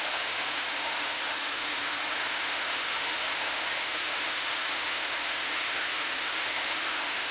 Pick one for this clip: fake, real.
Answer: fake